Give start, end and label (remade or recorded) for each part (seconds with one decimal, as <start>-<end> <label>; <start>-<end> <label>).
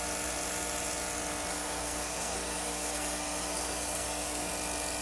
0.0-1.5 recorded; 1.5-4.5 remade; 4.5-5.0 recorded